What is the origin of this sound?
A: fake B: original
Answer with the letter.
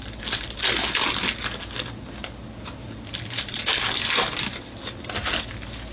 B